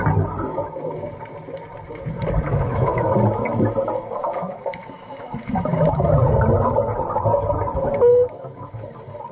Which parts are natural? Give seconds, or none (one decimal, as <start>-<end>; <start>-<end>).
0.0-2.5; 3.1-4.2; 6.1-8.1; 8.7-9.3